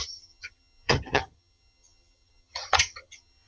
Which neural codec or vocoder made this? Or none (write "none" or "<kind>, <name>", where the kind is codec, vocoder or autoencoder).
vocoder, HiFi-GAN